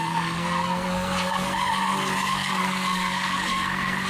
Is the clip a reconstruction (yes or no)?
yes